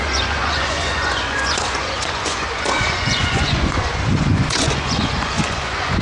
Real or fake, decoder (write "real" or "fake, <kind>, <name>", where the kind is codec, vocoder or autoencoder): fake, vocoder, Vocos